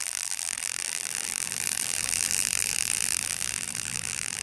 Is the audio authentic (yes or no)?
no